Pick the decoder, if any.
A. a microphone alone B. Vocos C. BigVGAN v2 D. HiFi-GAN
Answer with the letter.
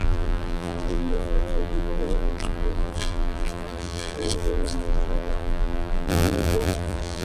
C